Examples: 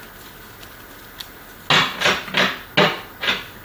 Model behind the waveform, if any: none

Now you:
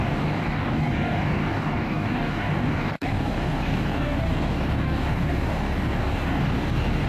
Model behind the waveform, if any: codec, DAC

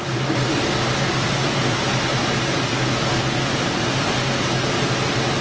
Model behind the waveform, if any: none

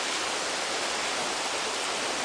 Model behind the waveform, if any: none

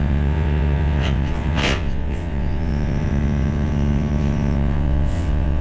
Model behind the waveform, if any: vocoder, WaveNeXt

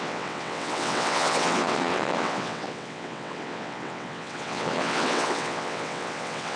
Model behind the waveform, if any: vocoder, WaveNeXt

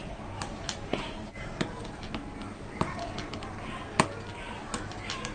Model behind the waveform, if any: none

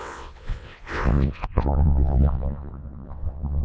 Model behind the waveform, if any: vocoder, WaveNeXt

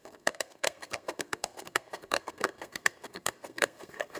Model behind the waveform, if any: codec, SNAC